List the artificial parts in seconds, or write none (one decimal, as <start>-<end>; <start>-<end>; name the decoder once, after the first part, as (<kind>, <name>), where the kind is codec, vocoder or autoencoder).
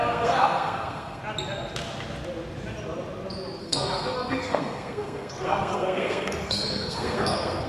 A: 0.0-1.2 (codec, SNAC); 3.6-7.7